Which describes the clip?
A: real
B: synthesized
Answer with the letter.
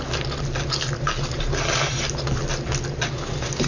A